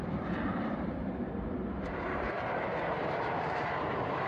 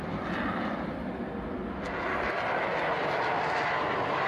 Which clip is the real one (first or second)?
second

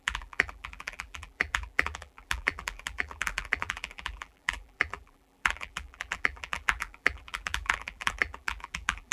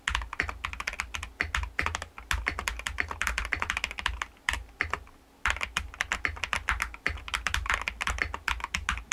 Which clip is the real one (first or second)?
second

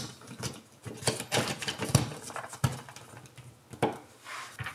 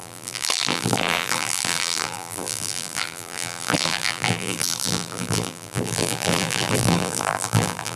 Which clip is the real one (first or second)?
first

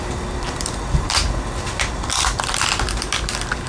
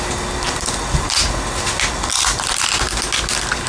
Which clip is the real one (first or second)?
second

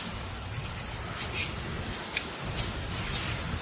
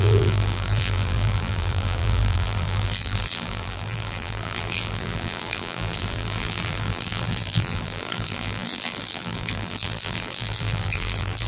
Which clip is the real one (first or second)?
first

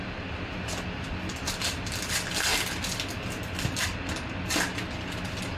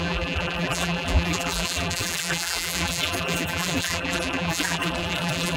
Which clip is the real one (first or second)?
first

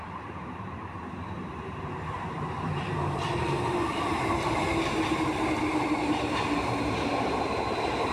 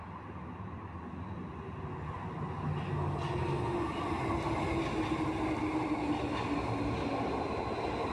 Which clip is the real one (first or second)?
second